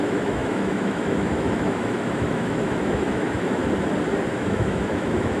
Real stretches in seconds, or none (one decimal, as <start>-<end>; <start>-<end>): 3.6-4.3